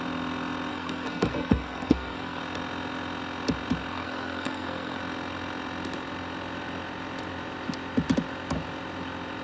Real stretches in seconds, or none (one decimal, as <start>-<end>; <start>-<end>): 0.0-0.7; 2.4-3.9; 5.0-9.4